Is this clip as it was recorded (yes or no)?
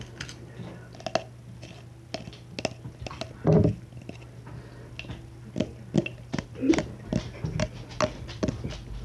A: yes